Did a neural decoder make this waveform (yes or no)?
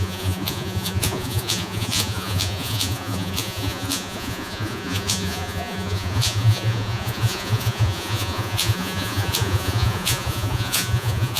yes